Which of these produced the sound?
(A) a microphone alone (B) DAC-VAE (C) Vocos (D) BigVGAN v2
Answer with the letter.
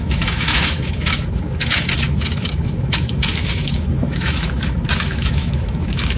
B